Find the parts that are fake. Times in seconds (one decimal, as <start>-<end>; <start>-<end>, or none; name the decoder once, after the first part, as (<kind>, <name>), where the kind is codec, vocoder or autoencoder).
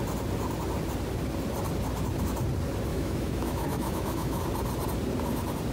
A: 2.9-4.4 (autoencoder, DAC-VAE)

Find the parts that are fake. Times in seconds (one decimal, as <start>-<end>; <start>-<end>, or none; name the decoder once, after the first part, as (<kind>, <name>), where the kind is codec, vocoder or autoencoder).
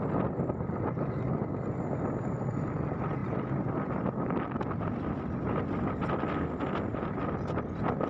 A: none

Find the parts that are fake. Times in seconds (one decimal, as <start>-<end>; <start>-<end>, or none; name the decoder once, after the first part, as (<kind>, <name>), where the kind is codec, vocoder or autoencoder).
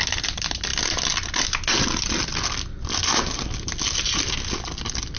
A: none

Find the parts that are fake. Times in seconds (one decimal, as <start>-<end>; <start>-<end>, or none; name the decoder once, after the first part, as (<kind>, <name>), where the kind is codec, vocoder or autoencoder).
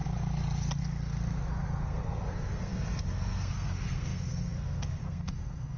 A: 0.8-5.8 (codec, SNAC)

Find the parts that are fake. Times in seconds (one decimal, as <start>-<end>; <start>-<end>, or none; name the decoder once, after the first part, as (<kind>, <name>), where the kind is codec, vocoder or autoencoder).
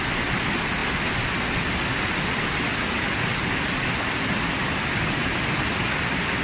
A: none